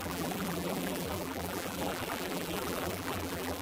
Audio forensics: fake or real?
fake